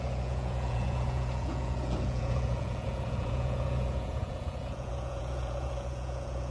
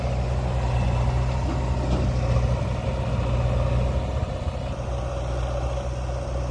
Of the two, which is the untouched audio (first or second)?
second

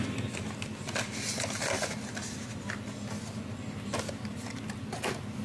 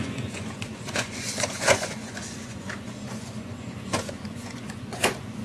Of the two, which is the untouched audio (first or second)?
first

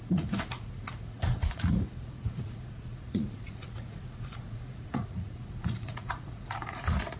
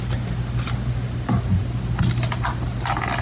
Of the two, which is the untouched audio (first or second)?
second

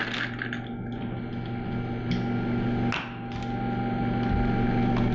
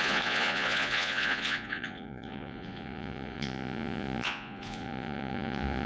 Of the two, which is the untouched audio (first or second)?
first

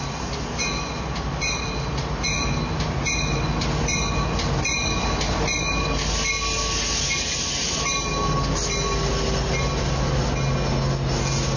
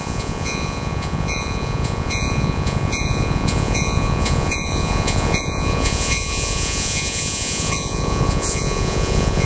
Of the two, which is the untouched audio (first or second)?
first